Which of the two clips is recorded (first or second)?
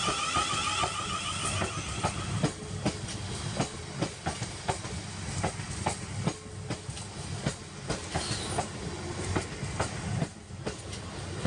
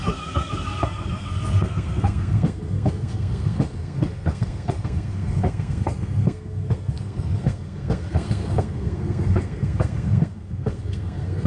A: first